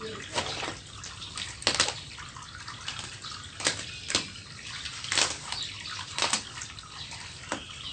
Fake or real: real